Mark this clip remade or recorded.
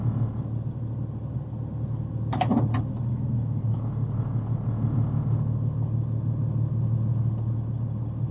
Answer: recorded